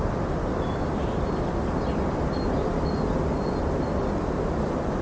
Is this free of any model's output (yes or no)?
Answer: yes